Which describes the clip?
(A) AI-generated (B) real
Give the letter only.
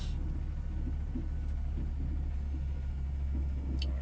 B